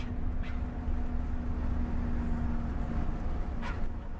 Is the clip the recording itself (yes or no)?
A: yes